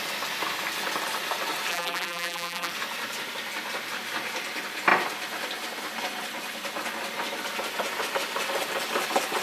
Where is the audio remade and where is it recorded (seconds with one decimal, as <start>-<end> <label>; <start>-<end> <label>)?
0.0-1.7 recorded; 1.7-2.7 remade; 2.7-9.4 recorded